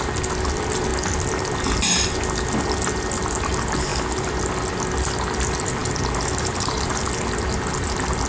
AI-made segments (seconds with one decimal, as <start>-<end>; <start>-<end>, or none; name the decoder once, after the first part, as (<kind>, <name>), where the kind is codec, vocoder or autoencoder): 3.9-4.7 (vocoder, BigVGAN v2); 5.8-7.0

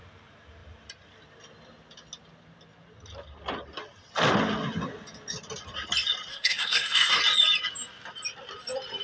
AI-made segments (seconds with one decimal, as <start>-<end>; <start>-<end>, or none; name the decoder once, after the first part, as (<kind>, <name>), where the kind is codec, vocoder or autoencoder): 6.3-7.2 (codec, SNAC)

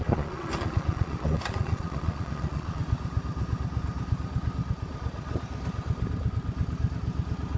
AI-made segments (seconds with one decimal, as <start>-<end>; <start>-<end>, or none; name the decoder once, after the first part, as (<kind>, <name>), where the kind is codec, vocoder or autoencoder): 0.0-2.8 (vocoder, Vocos)

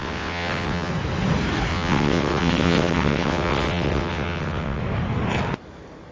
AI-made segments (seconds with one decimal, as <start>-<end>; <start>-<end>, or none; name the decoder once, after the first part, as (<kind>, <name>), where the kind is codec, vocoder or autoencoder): 0.0-0.9 (vocoder, WaveNeXt); 1.7-4.8

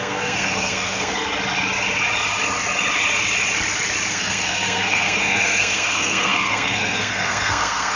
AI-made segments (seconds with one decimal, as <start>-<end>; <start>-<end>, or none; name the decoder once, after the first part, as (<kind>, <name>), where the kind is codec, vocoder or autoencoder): 0.0-1.1 (codec, SNAC); 4.1-8.0

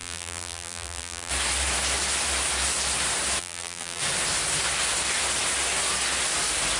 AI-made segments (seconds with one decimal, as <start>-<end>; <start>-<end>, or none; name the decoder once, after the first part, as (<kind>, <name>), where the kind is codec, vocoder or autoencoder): 0.0-1.3 (vocoder, BigVGAN v2); 3.4-4.0

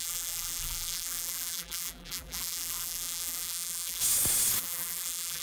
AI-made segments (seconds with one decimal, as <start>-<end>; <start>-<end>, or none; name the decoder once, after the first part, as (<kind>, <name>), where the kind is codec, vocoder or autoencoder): 0.0-4.0 (vocoder, BigVGAN v2); 4.6-5.4